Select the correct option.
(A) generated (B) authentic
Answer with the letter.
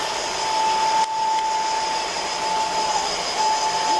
B